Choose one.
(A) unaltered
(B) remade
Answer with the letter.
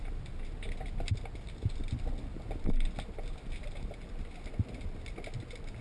A